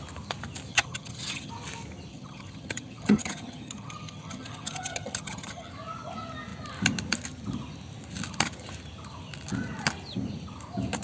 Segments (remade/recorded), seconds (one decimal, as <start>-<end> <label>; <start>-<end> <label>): 0.0-0.7 recorded; 0.7-1.5 remade; 1.5-2.1 recorded; 2.1-5.7 remade; 5.7-11.0 recorded